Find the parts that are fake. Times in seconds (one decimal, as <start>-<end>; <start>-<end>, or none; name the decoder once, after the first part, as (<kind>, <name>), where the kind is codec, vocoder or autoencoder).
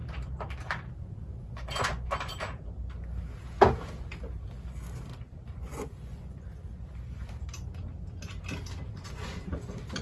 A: 1.0-2.3 (vocoder, Vocos); 5.5-6.7; 8.9-10.0